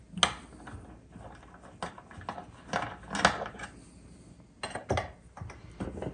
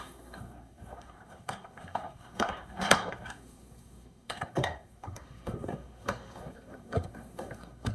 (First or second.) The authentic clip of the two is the first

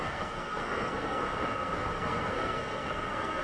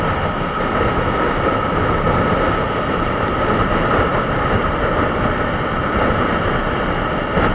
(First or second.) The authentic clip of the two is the second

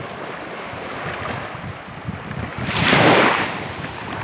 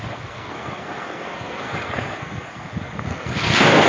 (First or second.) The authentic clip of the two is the first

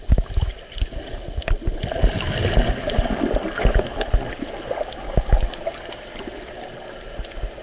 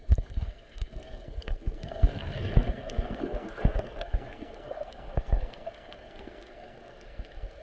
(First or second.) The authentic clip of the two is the first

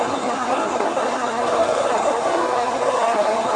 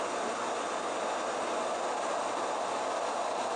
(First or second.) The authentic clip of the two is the second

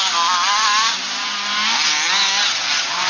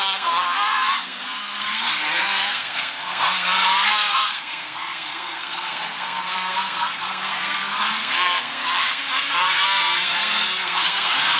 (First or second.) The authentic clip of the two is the first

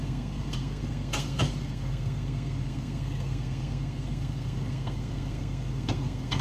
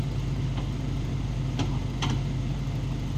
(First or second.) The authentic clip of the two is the second